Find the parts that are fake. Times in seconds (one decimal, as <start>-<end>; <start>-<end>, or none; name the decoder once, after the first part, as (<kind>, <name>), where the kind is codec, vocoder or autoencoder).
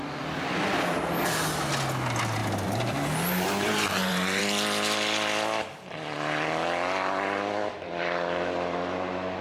2.4-4.4 (vocoder, BigVGAN v2)